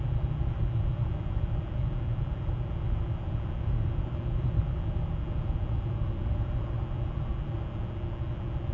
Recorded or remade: recorded